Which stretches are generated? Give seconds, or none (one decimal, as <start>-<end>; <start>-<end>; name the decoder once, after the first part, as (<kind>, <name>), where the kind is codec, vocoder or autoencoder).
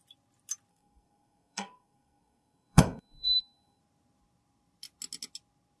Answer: 0.7-3.8 (codec, SNAC)